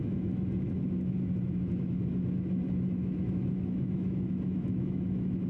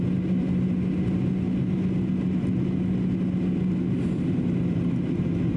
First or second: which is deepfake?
first